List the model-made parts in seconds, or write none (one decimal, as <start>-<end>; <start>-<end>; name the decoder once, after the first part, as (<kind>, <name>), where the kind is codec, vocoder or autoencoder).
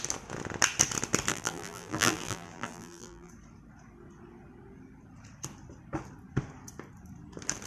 1.3-3.3 (vocoder, BigVGAN v2)